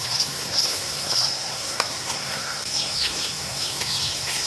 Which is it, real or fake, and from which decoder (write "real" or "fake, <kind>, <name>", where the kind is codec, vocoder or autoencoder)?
fake, codec, SNAC